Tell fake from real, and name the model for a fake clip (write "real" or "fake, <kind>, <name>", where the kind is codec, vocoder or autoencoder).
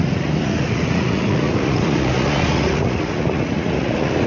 fake, vocoder, Vocos